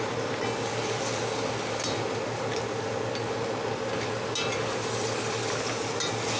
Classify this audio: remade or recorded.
recorded